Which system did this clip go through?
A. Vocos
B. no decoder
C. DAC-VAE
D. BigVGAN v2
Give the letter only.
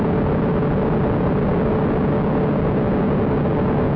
B